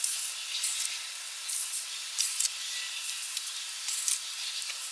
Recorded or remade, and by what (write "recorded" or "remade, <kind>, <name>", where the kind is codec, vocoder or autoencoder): recorded